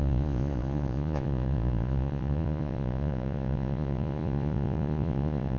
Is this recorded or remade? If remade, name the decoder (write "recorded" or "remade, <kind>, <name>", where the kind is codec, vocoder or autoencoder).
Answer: remade, vocoder, Vocos